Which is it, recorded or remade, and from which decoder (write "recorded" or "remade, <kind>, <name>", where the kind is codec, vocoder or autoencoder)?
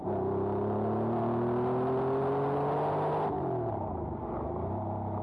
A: recorded